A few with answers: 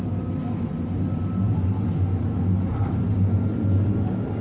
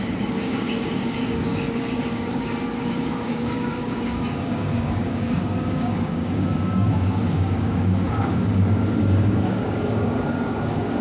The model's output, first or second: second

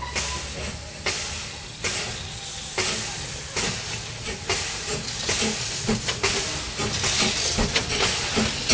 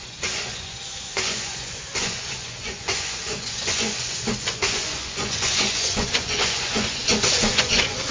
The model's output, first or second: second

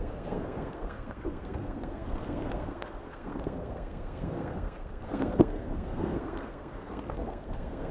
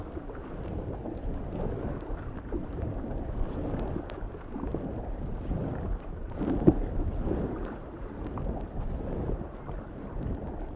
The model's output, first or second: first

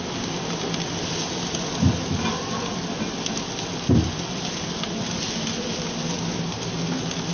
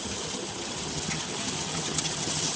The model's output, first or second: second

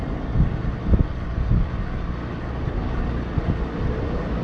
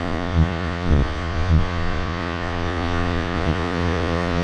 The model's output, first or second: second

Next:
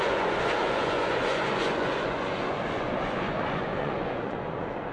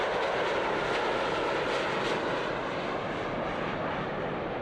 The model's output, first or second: first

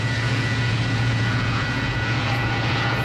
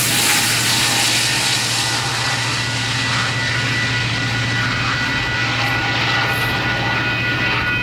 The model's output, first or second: first